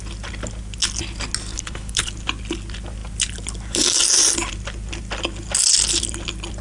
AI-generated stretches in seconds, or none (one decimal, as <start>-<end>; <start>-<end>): 1.5-2.1